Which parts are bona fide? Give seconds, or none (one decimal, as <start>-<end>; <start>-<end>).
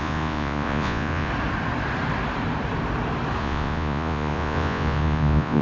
1.3-3.4